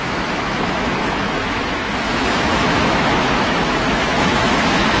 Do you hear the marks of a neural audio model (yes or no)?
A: yes